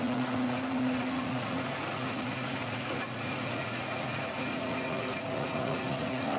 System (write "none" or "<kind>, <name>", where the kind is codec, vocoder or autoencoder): vocoder, Vocos